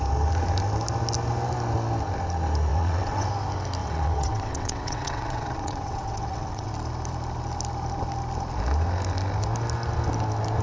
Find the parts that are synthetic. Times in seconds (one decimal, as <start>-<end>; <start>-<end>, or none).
2.7-3.3; 3.8-6.7